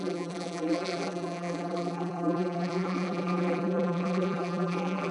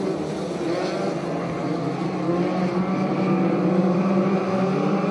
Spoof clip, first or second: first